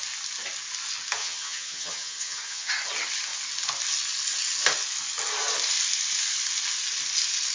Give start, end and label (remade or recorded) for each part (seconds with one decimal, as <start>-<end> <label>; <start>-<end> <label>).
0.0-1.2 recorded; 1.2-2.7 remade; 2.7-7.5 recorded